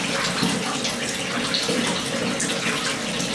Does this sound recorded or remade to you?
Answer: recorded